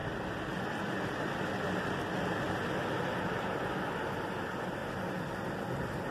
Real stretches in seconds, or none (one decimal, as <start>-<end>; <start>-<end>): 0.0-4.8; 5.5-6.1

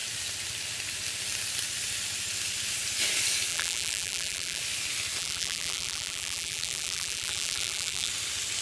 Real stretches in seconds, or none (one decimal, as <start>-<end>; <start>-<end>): 0.0-3.5; 4.6-5.2; 8.1-8.6

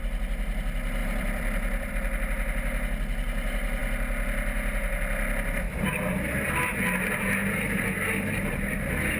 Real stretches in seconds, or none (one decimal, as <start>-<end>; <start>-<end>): 0.0-1.0; 1.9-9.2

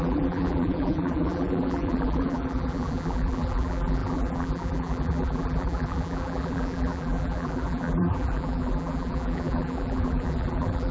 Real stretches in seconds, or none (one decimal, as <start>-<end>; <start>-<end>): none

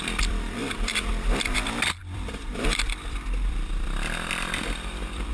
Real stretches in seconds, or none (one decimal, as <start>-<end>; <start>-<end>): none

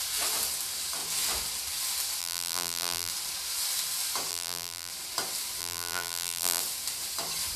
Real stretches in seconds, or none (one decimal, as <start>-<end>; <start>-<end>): 0.0-2.2; 3.1-4.3; 4.9-5.6; 6.6-7.6

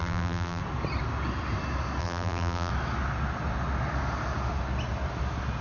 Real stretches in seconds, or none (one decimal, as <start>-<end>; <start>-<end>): 0.6-2.0; 2.7-5.6